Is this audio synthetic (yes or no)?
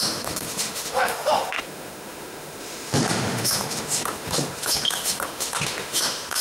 yes